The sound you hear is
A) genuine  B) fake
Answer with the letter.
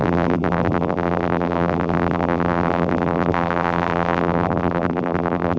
B